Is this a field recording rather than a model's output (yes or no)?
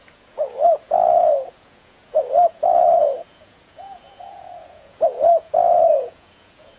no